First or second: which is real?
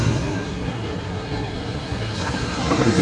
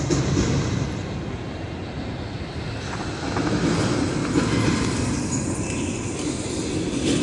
second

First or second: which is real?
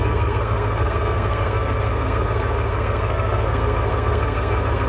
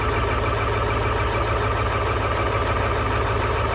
second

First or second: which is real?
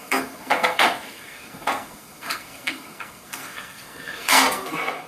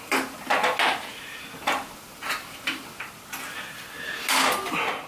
second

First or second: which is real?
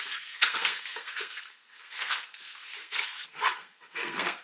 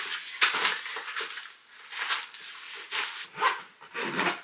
second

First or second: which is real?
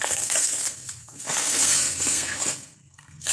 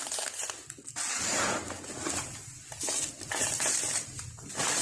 second